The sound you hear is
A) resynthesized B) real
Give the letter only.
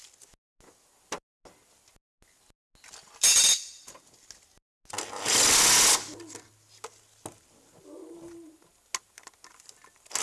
B